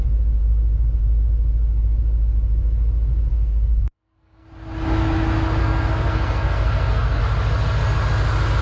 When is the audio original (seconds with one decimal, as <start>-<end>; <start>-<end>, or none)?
0.0-3.3; 4.5-5.6; 7.2-8.6

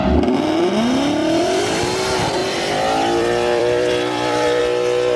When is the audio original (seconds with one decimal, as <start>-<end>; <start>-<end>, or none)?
0.0-1.2; 1.8-2.4; 4.6-5.2

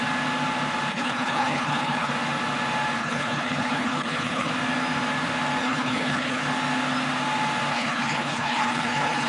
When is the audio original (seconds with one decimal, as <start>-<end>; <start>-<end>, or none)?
0.0-0.9; 2.1-3.0; 4.5-5.6; 6.4-7.7